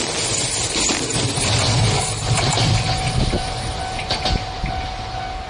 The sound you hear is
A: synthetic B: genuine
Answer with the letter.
B